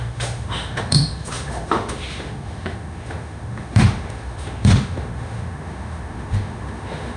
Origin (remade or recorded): remade